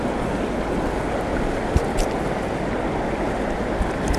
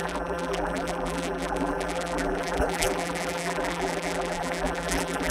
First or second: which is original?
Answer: first